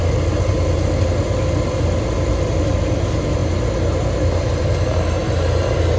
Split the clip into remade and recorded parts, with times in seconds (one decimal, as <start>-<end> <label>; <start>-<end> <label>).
0.0-6.0 recorded